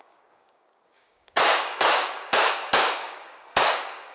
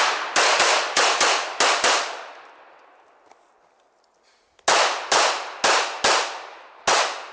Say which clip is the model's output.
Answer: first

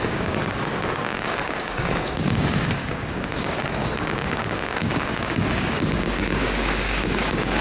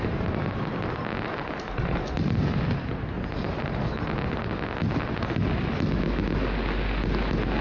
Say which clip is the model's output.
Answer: first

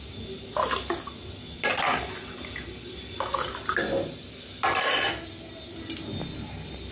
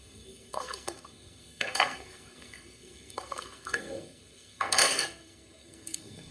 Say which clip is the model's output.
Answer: second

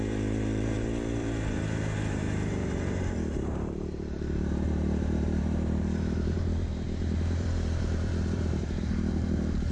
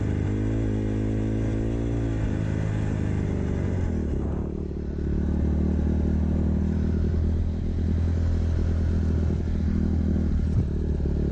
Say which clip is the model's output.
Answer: first